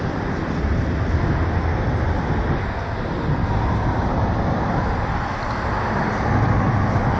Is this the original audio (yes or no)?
yes